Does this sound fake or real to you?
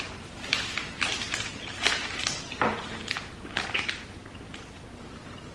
real